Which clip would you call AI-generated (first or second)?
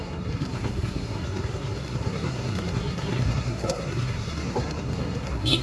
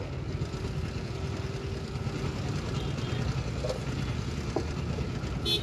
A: first